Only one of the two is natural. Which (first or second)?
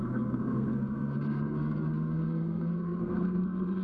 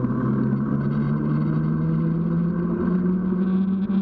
second